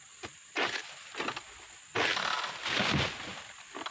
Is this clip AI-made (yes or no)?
no